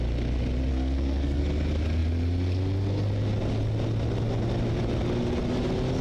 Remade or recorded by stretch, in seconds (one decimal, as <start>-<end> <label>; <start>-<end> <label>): 0.0-0.7 recorded; 0.7-1.4 remade; 1.4-6.0 recorded